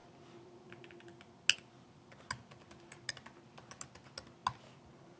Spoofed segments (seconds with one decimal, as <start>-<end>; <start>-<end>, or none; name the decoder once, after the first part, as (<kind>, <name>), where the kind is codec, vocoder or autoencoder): none